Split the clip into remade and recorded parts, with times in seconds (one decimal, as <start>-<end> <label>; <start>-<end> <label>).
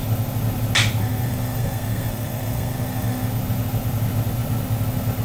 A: 0.0-1.0 recorded; 1.0-3.3 remade; 3.3-5.2 recorded